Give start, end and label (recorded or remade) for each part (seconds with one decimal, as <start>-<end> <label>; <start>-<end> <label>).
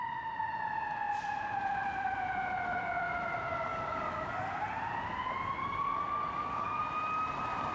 0.0-3.7 recorded; 3.7-4.5 remade; 4.5-5.6 recorded; 5.6-6.8 remade; 6.8-7.7 recorded